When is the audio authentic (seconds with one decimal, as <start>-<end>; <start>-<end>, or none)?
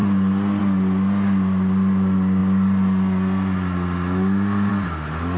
0.0-5.4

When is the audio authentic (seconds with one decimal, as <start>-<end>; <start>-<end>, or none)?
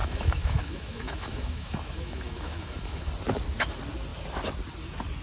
3.1-5.2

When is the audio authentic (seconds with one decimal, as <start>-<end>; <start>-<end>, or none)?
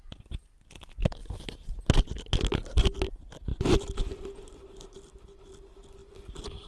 0.0-6.7